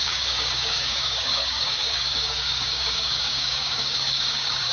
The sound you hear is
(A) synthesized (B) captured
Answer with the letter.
A